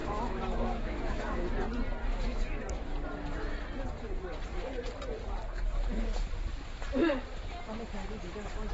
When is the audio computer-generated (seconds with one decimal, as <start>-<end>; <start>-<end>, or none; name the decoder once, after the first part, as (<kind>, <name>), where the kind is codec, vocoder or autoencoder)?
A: 0.0-1.5 (autoencoder, DAC-VAE); 2.0-2.6